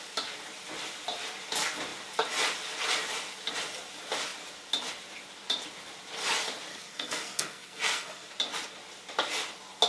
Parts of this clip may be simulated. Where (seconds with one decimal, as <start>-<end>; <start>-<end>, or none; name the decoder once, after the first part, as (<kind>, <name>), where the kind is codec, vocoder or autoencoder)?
6.7-8.3 (codec, SNAC)